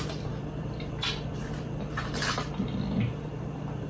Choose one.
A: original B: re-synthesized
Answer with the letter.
B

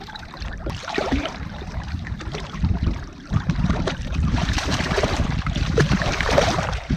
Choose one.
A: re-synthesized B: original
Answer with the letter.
A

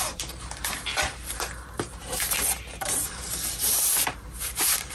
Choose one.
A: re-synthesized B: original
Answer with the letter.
A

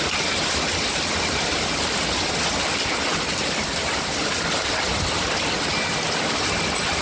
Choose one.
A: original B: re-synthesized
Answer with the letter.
A